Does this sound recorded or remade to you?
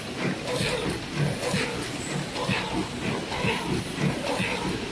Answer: recorded